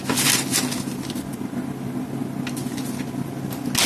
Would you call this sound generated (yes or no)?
no